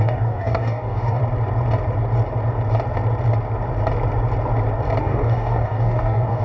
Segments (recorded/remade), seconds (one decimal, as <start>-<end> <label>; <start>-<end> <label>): 0.0-1.2 remade; 1.2-5.0 recorded; 5.0-6.4 remade